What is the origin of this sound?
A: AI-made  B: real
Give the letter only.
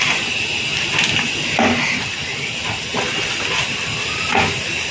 B